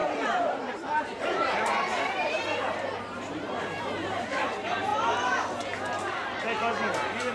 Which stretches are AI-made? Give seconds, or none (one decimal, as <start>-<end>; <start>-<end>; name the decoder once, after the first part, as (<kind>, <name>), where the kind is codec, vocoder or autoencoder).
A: 0.0-4.9 (vocoder, BigVGAN v2)